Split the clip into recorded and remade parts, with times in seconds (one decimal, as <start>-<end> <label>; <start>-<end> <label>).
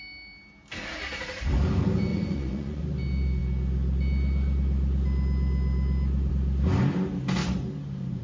0.0-2.1 recorded; 2.1-2.8 remade; 2.8-8.2 recorded